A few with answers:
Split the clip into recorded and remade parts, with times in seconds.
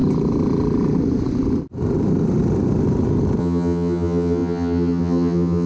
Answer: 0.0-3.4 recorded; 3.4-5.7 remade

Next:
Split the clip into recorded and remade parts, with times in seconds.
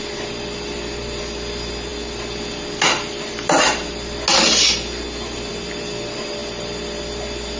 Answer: 0.0-7.6 recorded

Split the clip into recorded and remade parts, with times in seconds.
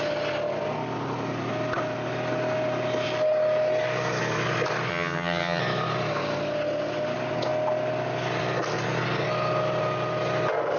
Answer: 0.0-4.9 recorded; 4.9-5.6 remade; 5.6-10.8 recorded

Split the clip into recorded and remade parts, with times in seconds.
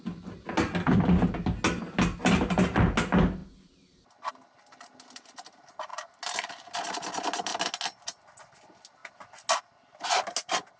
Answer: 0.0-10.8 recorded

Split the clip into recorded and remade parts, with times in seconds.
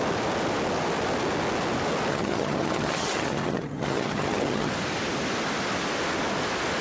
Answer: 0.0-2.1 recorded; 2.1-4.7 remade; 4.7-6.8 recorded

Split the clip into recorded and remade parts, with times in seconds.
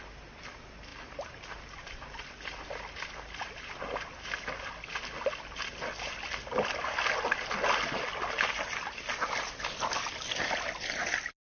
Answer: 0.0-11.4 recorded